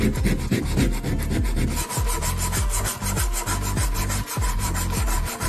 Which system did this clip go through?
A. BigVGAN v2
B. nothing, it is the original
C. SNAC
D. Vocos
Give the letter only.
B